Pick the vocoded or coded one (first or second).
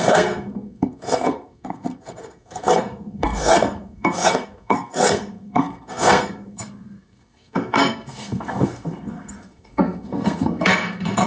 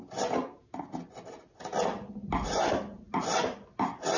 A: first